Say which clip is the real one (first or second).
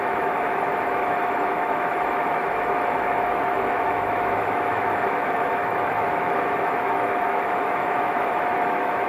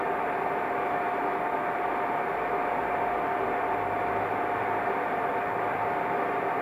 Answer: second